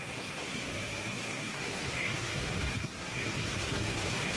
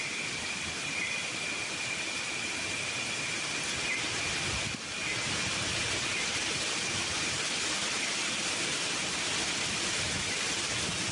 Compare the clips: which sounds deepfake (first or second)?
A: first